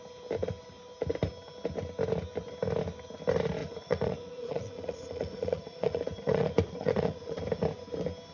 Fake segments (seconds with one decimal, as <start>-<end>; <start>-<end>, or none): 3.6-7.4

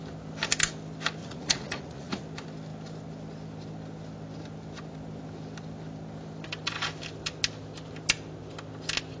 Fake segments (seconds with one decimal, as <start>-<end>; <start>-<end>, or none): 1.2-2.2